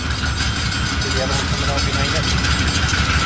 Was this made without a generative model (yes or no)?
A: yes